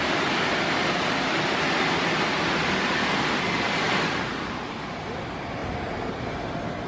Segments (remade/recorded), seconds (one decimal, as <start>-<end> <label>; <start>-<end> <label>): 0.0-0.8 remade; 0.8-4.2 recorded; 4.2-6.9 remade